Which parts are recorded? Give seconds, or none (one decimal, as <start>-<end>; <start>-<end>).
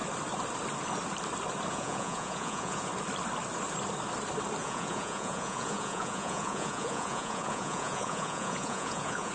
0.0-1.7; 2.9-4.6